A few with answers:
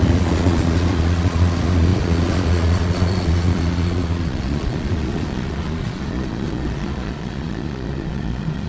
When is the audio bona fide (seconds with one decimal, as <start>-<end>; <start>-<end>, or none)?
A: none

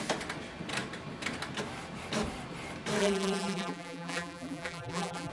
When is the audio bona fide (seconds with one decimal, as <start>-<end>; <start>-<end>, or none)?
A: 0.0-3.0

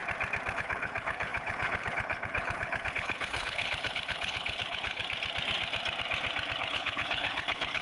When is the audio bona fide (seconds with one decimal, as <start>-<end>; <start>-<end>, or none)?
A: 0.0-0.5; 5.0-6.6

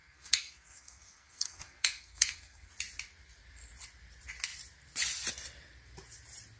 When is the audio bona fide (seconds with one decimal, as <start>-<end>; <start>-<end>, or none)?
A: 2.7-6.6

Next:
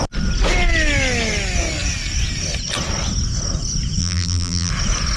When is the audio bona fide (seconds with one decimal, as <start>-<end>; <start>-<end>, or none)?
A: 0.0-4.0; 4.7-5.2

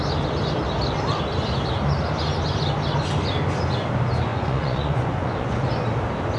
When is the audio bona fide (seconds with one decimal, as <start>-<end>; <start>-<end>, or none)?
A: 0.0-4.3; 5.7-6.4

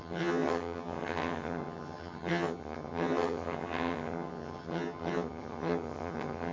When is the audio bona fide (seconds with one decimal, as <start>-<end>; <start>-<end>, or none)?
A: none